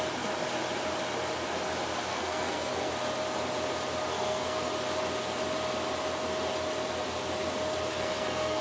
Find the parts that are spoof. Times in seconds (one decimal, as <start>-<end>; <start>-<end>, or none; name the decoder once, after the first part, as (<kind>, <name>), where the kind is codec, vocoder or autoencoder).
2.1-2.9 (codec, SNAC); 4.1-4.7; 7.9-8.6

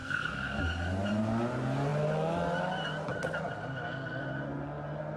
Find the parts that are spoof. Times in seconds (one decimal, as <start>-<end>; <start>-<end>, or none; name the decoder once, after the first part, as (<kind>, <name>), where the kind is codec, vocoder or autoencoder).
0.0-0.6 (codec, SNAC)

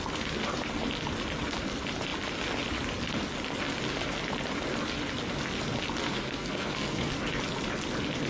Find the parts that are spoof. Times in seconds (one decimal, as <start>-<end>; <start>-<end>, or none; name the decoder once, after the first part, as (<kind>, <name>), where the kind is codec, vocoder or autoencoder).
6.0-7.1 (codec, SNAC)